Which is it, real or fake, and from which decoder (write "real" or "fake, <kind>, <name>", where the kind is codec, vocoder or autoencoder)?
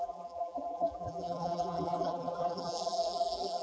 fake, vocoder, BigVGAN v2